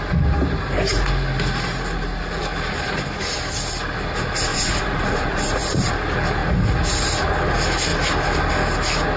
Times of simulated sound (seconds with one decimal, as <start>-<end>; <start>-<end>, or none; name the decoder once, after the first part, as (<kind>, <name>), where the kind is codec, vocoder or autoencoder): 4.5-5.9 (vocoder, Vocos)